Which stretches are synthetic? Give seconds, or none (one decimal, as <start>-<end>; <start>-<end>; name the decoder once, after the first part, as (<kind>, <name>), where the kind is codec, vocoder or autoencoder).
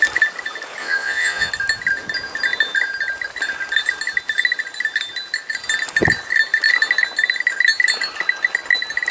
0.8-1.5 (vocoder, Vocos)